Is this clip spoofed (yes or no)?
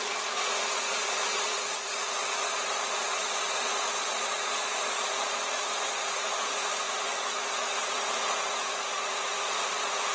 yes